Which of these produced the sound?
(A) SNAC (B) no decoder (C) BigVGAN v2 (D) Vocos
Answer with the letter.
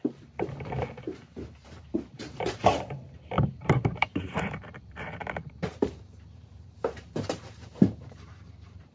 C